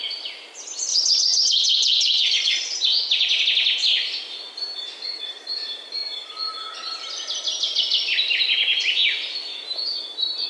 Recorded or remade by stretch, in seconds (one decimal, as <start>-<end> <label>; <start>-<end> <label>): 0.0-0.9 recorded; 0.9-3.4 remade; 3.4-10.5 recorded